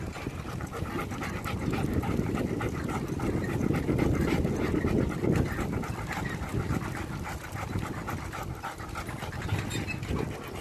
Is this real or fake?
real